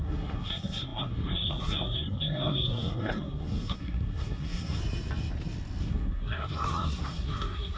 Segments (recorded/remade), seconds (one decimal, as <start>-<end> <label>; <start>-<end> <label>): 0.0-4.8 remade; 4.8-5.8 recorded; 5.8-7.8 remade